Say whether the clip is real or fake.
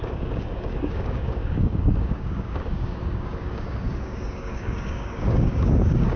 fake